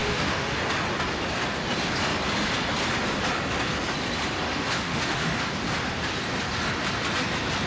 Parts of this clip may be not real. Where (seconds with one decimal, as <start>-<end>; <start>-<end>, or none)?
0.0-0.6; 4.5-5.4